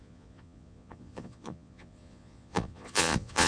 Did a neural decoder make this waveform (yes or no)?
yes